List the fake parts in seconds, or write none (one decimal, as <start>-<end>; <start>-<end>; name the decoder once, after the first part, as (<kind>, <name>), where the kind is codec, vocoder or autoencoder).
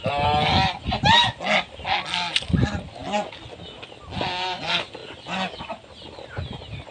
none